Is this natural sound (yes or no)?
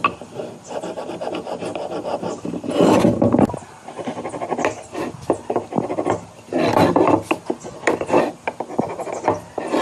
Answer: yes